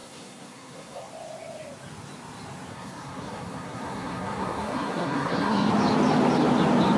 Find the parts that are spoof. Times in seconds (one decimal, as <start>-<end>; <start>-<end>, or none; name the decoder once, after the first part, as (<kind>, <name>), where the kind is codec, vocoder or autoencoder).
0.0-1.1 (codec, SNAC); 2.7-5.7